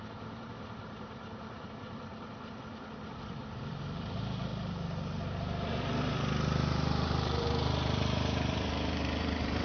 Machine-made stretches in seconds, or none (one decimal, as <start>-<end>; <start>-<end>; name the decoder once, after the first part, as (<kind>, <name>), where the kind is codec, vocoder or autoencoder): 0.0-2.1 (vocoder, BigVGAN v2); 3.0-4.5; 5.7-9.6